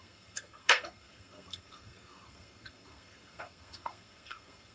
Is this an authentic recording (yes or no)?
no